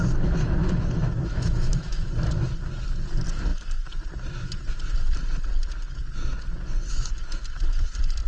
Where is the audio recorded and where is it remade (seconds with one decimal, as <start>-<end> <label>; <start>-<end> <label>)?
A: 0.0-0.6 recorded; 0.6-2.1 remade; 2.1-8.3 recorded